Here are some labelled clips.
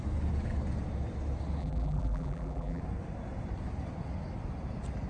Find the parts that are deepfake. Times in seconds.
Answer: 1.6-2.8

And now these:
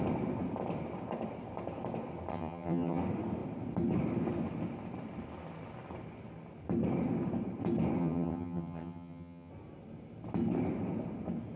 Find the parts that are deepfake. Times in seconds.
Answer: 2.3-3.0; 8.0-9.5